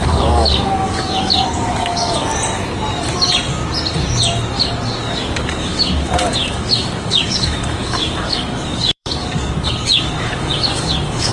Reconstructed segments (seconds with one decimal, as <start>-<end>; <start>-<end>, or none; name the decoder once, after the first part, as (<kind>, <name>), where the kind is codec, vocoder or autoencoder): 0.0-2.3 (codec, DAC); 5.0-11.3